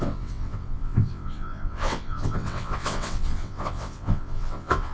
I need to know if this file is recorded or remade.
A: remade